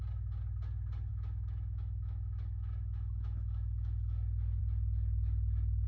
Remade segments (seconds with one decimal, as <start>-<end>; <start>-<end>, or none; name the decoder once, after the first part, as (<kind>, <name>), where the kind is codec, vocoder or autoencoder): 1.1-4.6 (autoencoder, DAC-VAE)